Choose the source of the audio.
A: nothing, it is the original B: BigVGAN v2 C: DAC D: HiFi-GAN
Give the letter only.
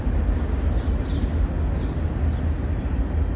A